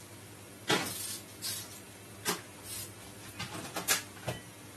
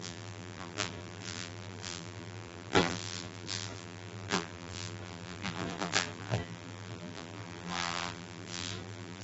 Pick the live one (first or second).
first